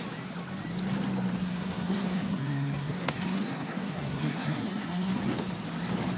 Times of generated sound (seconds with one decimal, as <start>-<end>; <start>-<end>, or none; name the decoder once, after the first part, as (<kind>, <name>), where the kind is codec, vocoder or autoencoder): 1.4-5.1 (codec, SNAC)